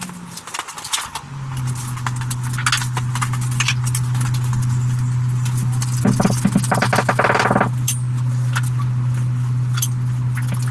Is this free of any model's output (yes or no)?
yes